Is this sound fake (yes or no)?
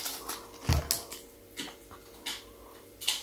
no